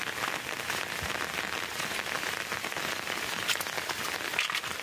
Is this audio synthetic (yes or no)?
no